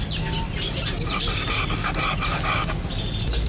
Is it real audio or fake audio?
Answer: real